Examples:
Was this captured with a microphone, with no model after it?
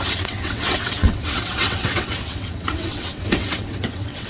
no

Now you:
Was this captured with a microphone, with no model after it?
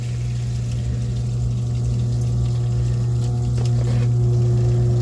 yes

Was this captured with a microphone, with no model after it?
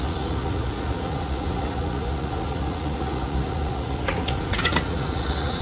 no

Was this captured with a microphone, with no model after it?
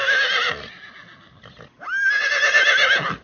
yes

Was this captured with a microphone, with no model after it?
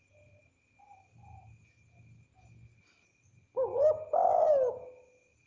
yes